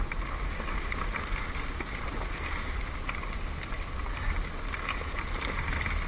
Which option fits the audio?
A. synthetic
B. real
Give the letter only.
B